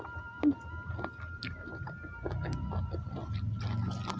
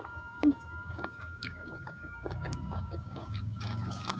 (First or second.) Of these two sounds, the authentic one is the first